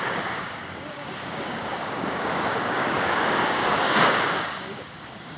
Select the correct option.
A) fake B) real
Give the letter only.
A